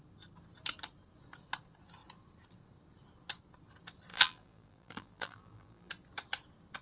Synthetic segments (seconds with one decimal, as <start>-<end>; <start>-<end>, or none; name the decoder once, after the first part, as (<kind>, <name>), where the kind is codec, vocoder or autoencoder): 4.1-5.9 (vocoder, BigVGAN v2)